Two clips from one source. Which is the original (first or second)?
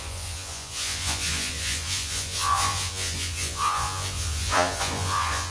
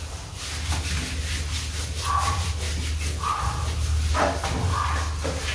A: second